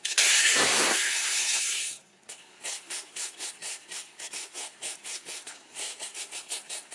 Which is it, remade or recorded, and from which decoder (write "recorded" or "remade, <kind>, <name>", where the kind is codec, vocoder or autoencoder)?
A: remade, codec, SNAC